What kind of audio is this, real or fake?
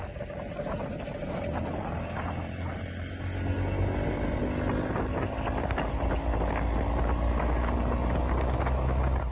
real